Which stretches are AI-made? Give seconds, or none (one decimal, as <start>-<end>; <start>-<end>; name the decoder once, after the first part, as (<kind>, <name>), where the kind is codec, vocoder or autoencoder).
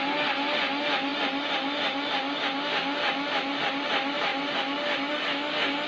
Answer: none